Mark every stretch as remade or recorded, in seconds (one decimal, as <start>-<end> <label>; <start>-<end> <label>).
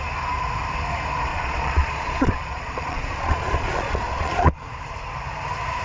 0.0-1.3 recorded; 1.3-4.8 remade; 4.8-5.8 recorded